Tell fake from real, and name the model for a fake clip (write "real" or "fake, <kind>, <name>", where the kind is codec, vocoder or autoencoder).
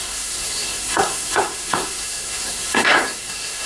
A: fake, codec, SNAC